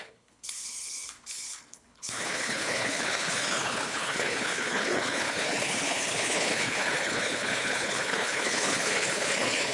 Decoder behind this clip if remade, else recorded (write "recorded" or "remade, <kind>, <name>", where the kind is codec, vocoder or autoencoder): remade, codec, HILCodec